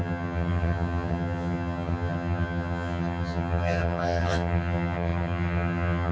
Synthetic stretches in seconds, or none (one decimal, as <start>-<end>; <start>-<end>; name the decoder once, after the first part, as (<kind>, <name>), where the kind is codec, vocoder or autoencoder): 0.0-6.1 (vocoder, HiFi-GAN)